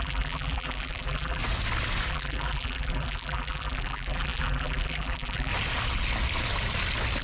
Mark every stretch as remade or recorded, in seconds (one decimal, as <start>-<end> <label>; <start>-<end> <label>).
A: 0.0-1.4 remade; 1.4-2.1 recorded; 2.1-5.5 remade; 5.5-7.2 recorded